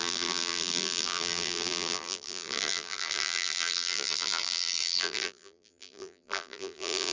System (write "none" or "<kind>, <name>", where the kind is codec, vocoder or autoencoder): vocoder, BigVGAN v2